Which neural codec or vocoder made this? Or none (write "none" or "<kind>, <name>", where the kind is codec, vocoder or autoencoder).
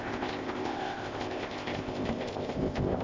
codec, ZipCodec